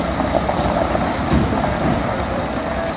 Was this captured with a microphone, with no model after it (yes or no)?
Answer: yes